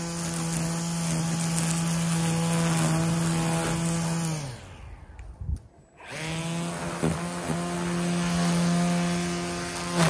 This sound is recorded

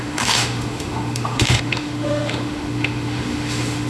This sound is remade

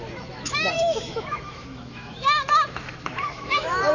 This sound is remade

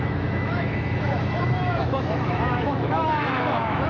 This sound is remade